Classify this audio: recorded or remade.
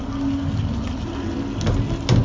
recorded